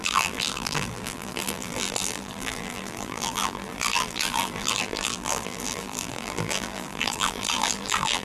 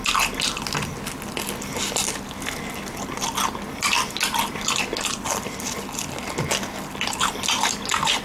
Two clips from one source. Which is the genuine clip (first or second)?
second